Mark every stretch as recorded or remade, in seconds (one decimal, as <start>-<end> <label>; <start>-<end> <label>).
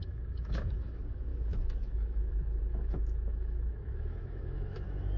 0.0-5.2 remade